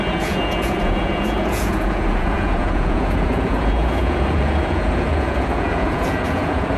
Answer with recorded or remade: remade